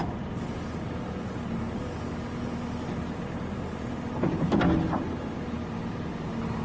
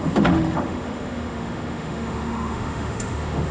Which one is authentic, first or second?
first